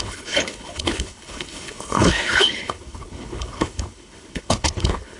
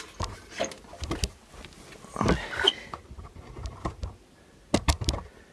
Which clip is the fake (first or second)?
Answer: first